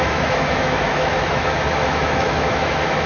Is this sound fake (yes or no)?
yes